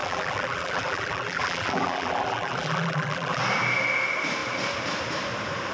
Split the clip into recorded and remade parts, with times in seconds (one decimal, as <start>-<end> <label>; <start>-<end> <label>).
0.0-3.4 remade; 3.4-5.7 recorded